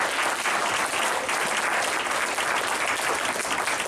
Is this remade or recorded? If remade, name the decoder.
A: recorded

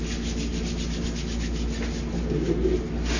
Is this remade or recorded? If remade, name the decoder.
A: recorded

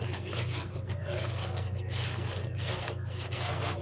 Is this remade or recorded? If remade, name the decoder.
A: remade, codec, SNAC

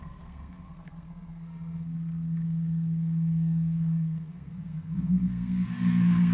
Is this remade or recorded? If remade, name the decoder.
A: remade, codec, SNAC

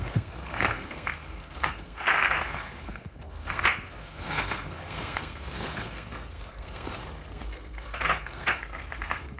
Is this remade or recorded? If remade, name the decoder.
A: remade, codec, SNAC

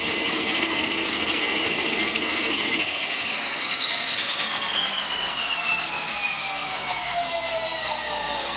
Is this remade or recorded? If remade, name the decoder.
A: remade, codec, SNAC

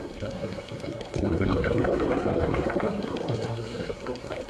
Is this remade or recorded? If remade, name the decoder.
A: remade, codec, SNAC